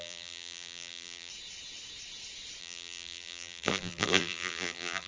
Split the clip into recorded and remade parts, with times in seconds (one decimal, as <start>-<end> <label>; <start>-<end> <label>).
0.0-1.3 remade; 1.3-2.6 recorded; 2.6-5.1 remade